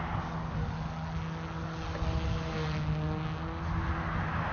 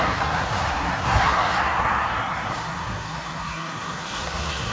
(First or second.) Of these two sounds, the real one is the first